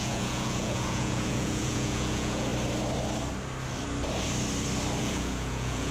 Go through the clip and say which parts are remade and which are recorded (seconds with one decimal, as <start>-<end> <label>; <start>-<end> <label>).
0.0-2.5 remade; 2.5-5.0 recorded; 5.0-5.9 remade